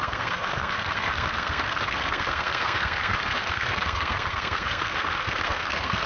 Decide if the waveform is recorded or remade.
remade